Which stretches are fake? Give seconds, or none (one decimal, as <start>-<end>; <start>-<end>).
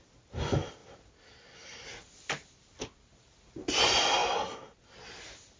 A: none